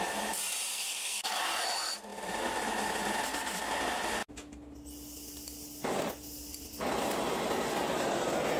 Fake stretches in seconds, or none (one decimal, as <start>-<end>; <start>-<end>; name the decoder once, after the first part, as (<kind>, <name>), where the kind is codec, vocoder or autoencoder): 0.7-1.4 (codec, SNAC)